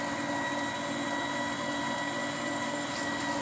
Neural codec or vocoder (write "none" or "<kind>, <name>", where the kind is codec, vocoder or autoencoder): none